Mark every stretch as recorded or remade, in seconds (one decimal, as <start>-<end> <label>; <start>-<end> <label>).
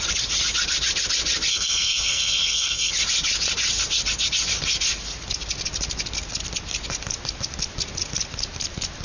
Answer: 0.0-1.5 recorded; 1.5-2.9 remade; 2.9-9.0 recorded